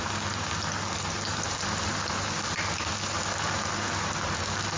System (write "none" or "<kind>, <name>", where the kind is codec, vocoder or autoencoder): none